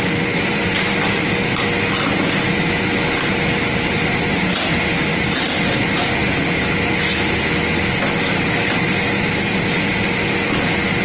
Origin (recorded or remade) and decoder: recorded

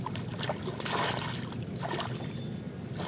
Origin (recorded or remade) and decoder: recorded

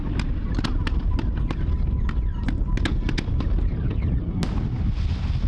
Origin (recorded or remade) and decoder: recorded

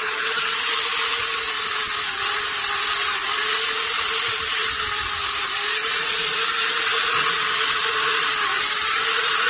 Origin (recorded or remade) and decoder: recorded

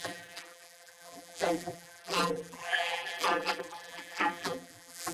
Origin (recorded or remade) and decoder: remade, vocoder, BigVGAN v2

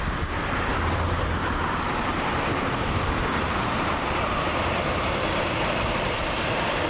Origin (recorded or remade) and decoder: remade, vocoder, BigVGAN v2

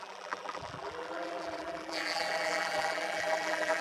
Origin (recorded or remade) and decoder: remade, vocoder, BigVGAN v2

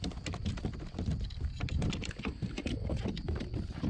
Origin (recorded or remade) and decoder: remade, vocoder, BigVGAN v2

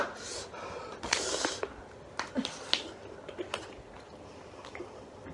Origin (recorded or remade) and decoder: recorded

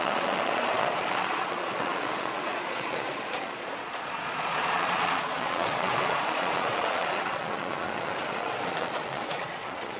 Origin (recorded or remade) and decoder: remade, vocoder, Vocos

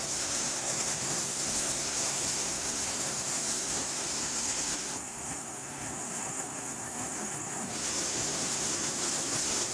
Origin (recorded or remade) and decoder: remade, codec, SNAC